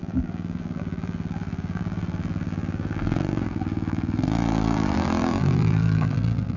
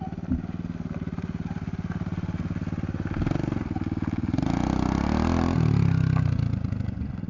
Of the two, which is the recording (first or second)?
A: second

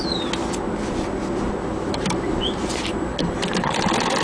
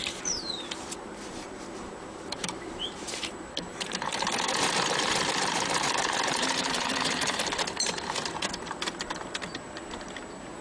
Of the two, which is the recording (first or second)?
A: first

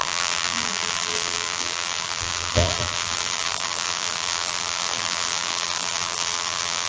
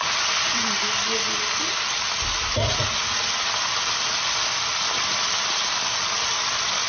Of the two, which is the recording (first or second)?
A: second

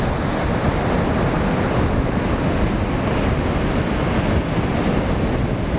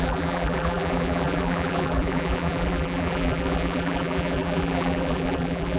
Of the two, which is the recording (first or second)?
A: first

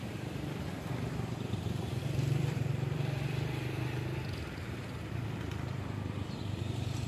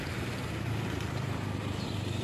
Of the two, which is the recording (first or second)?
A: second